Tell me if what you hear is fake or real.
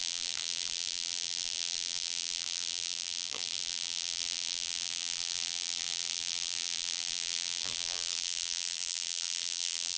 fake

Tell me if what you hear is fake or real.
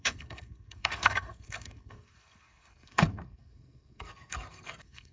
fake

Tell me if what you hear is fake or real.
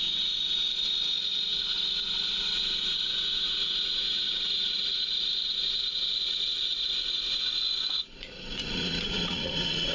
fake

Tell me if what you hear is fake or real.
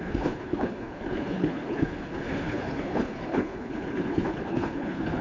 fake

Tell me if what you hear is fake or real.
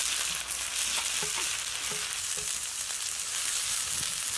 real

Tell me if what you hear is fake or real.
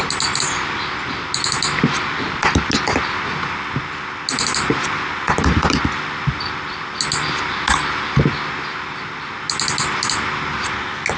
real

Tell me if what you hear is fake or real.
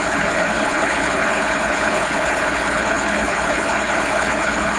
fake